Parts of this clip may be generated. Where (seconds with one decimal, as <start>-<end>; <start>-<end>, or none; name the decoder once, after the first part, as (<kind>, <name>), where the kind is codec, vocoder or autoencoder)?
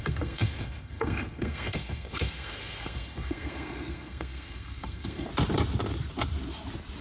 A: 0.0-5.3 (codec, SNAC)